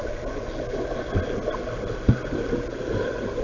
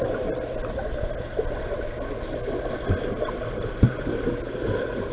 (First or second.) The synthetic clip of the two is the second